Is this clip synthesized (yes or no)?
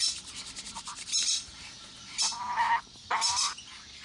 no